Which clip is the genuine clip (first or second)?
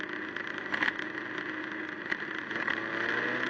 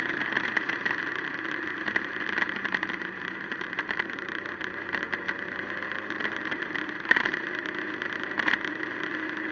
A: first